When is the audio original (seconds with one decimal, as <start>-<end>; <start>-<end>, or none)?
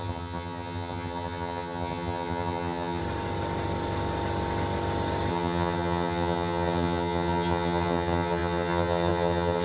3.0-5.3